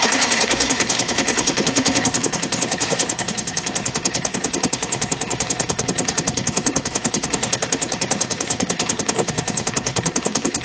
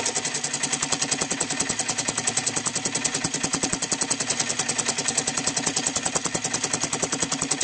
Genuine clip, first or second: second